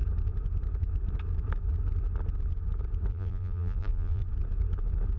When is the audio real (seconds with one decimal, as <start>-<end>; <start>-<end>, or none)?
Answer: 0.0-3.1; 4.2-5.2